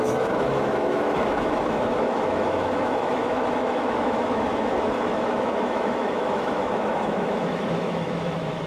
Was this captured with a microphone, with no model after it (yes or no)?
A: no